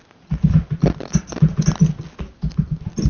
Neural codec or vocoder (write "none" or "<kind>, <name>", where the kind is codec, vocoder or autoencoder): none